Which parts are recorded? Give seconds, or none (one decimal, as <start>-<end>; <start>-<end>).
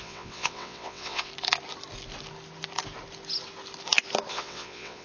1.3-4.3